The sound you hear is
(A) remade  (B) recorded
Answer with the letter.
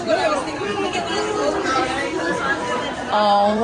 A